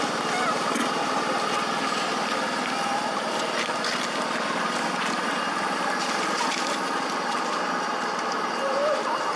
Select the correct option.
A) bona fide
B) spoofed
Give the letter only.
A